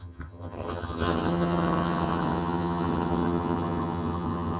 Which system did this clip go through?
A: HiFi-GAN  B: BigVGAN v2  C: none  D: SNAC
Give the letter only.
A